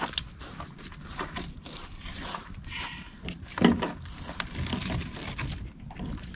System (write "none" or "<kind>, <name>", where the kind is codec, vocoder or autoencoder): none